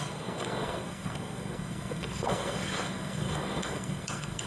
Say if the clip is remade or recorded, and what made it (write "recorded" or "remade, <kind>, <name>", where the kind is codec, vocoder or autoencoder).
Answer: remade, codec, SNAC